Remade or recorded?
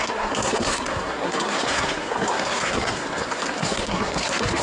remade